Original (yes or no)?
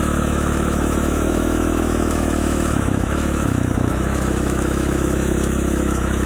no